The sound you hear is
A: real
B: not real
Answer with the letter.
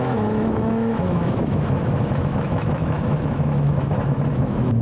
B